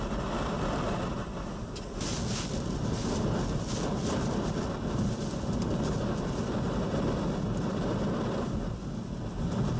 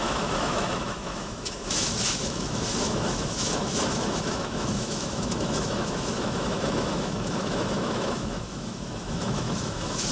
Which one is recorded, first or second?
first